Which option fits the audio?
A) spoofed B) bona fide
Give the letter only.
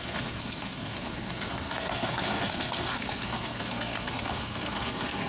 A